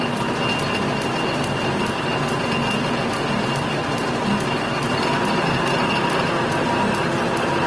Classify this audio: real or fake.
real